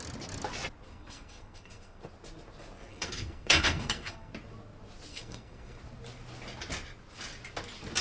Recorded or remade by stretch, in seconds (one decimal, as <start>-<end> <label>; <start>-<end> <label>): 0.0-0.9 recorded; 0.9-2.0 remade; 2.0-2.9 recorded; 2.9-4.3 remade; 4.3-5.1 recorded; 5.1-5.8 remade; 5.8-8.0 recorded